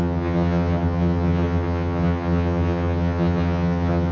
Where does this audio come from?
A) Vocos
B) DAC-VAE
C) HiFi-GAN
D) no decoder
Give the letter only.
C